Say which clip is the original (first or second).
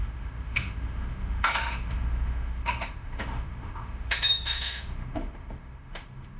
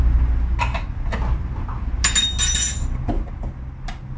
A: second